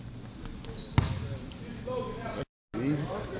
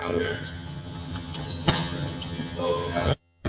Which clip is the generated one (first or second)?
second